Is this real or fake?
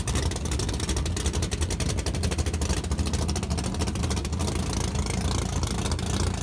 real